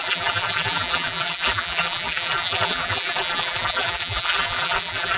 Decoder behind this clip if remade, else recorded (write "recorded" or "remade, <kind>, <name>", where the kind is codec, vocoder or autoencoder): remade, vocoder, BigVGAN v2